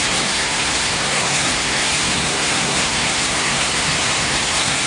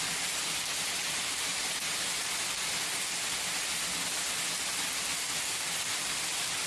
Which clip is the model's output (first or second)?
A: first